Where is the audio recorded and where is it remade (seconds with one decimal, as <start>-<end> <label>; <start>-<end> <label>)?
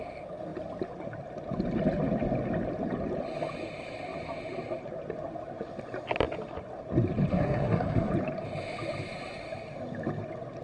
0.0-7.3 recorded; 7.3-8.1 remade; 8.1-10.6 recorded